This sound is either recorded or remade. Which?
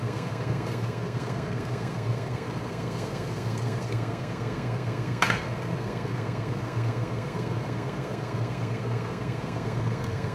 remade